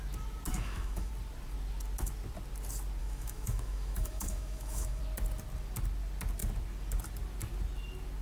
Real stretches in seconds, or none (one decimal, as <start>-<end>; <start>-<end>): 0.0-0.5; 1.1-3.0; 5.0-8.2